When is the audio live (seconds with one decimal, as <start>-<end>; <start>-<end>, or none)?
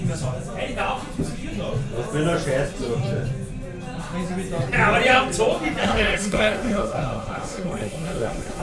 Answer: 0.0-5.8